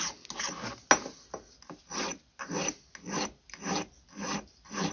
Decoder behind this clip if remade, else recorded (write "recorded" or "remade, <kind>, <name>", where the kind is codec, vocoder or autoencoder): recorded